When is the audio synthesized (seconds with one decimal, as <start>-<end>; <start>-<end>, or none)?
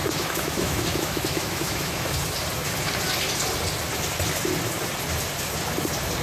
0.0-2.1